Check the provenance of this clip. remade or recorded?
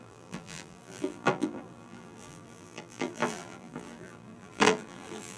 remade